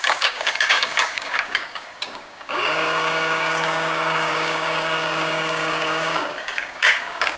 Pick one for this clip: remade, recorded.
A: remade